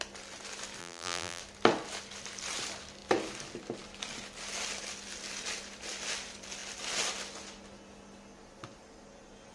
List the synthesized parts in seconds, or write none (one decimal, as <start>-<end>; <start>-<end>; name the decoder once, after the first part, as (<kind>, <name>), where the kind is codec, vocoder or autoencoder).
0.8-1.4 (vocoder, BigVGAN v2)